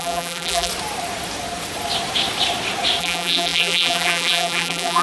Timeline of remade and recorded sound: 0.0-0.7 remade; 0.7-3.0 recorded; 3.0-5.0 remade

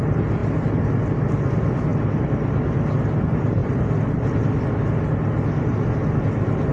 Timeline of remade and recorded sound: 0.0-1.9 recorded; 1.9-2.6 remade; 2.6-6.7 recorded

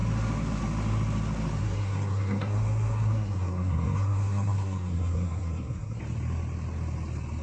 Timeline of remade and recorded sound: 0.0-1.6 recorded; 1.6-6.0 remade; 6.0-7.4 recorded